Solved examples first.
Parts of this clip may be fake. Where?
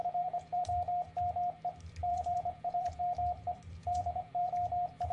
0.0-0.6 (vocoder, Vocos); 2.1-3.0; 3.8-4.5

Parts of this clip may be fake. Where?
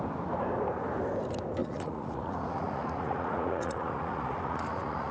1.6-5.1 (vocoder, Vocos)